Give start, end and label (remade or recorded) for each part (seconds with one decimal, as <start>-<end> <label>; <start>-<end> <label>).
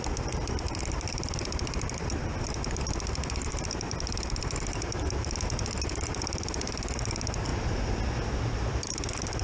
0.0-7.5 remade; 7.5-8.7 recorded; 8.7-9.4 remade